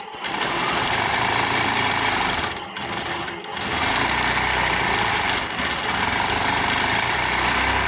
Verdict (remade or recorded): recorded